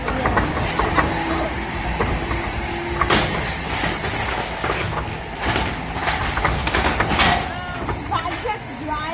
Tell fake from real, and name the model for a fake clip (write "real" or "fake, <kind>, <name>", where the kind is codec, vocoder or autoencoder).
real